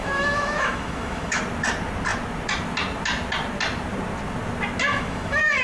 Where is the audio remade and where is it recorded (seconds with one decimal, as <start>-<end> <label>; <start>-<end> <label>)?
0.0-1.4 remade; 1.4-4.9 recorded; 4.9-5.6 remade